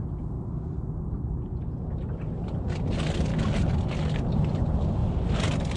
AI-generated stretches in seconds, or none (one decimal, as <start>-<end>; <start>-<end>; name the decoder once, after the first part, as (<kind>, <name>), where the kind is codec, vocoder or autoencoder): none